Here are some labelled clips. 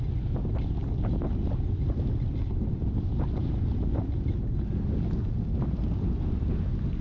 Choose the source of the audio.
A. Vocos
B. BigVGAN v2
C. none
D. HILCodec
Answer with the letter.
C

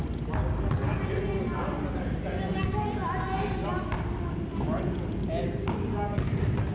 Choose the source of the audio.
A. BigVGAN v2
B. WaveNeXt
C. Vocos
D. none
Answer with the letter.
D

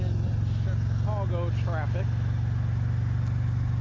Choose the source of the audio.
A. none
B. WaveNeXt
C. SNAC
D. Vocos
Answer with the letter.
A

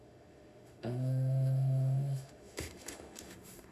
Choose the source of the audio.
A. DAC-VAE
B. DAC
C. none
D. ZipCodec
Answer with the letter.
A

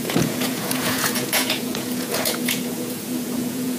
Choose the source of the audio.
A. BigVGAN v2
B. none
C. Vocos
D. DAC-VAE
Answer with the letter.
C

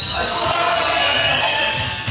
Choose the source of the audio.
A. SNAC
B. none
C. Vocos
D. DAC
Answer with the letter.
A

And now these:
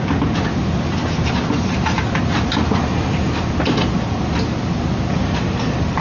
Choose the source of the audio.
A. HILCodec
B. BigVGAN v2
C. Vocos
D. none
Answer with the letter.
D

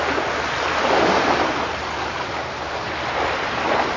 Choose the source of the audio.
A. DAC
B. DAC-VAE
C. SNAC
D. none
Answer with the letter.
D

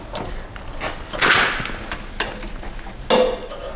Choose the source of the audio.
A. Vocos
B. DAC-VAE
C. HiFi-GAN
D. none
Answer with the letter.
D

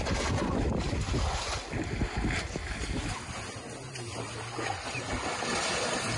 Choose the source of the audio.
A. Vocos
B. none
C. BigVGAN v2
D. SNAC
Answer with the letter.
B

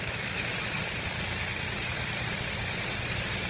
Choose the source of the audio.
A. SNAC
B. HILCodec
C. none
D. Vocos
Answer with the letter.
C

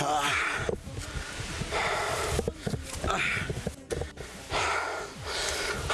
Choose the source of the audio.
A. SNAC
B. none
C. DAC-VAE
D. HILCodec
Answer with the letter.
B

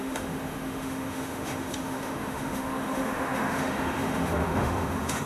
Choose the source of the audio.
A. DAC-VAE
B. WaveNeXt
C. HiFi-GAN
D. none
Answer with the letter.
A